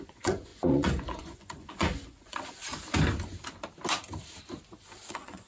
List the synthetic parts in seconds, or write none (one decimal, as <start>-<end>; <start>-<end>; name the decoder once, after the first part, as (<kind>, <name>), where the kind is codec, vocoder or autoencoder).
0.0-2.6 (vocoder, Vocos); 5.1-5.5